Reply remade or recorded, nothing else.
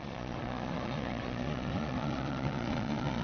remade